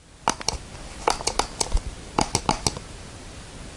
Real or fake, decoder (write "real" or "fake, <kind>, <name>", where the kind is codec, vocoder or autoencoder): real